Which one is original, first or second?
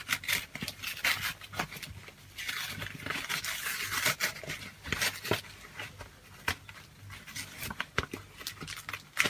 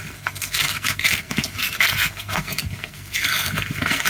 first